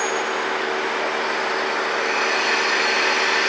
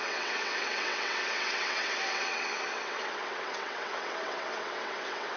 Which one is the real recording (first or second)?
first